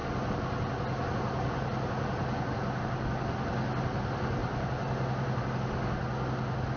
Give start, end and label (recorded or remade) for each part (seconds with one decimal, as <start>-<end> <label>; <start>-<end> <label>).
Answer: 0.0-4.4 recorded; 4.4-5.4 remade; 5.4-6.8 recorded